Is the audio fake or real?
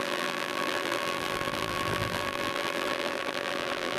fake